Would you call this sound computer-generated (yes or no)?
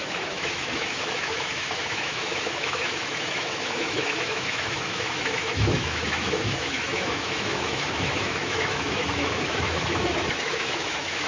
yes